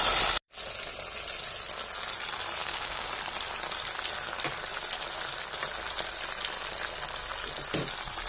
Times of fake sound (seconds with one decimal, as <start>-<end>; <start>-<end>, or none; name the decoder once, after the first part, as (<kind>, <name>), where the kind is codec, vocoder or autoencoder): 2.6-3.1 (codec, DAC)